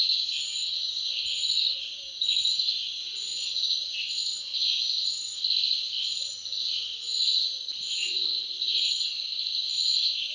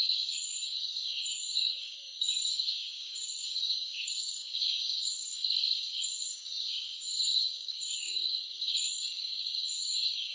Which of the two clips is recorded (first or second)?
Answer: first